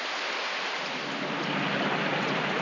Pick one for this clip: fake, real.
real